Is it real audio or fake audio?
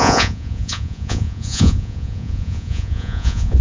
fake